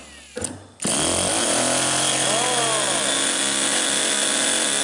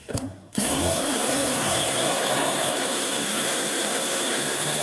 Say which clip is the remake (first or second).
second